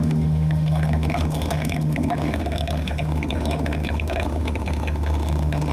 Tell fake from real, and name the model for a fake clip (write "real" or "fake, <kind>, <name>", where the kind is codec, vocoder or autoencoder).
fake, autoencoder, DAC-VAE